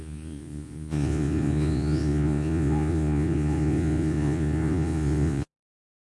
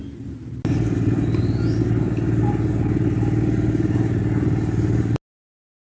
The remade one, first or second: first